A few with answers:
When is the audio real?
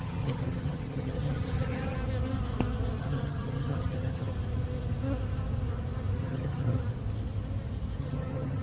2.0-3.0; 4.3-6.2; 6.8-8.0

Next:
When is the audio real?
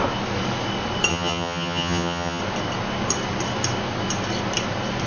0.0-1.1; 2.4-5.1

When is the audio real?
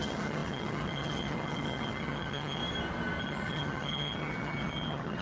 2.6-3.2